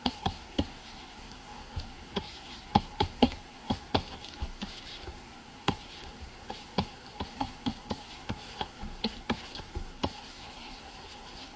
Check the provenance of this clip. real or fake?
fake